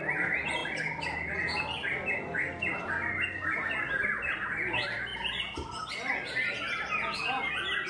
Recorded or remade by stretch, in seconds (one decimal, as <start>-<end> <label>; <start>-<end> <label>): 0.0-7.9 recorded